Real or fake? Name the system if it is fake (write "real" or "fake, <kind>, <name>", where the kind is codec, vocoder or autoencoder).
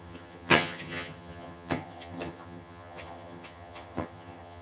fake, vocoder, HiFi-GAN